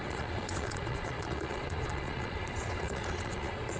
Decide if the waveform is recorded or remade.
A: remade